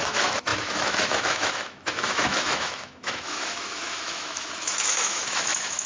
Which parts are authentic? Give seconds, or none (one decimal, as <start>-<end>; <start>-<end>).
none